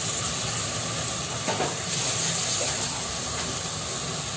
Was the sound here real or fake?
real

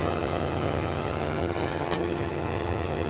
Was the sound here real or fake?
fake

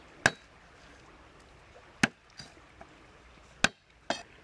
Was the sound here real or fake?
real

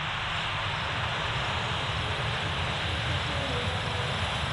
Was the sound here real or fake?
fake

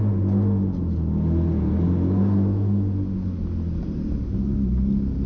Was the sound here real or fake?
real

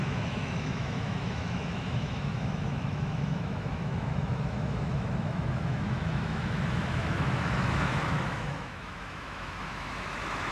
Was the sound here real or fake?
fake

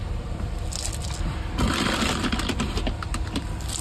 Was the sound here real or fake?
real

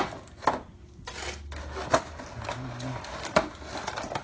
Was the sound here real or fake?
real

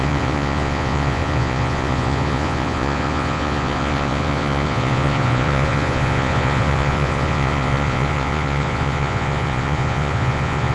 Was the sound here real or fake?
fake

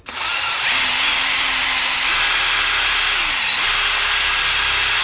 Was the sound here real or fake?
real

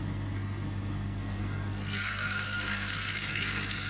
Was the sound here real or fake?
fake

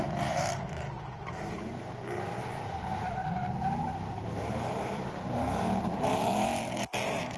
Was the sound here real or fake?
fake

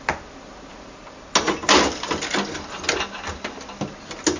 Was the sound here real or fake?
real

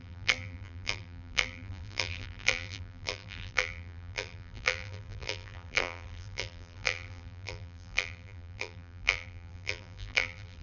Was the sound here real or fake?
fake